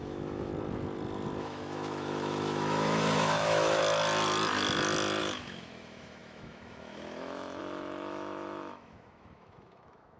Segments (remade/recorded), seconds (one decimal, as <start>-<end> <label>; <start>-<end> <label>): 0.0-0.5 remade; 0.5-1.4 recorded; 1.4-3.8 remade; 3.8-5.2 recorded; 5.2-10.2 remade